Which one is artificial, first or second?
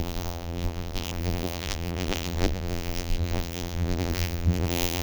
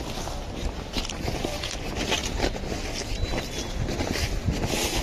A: first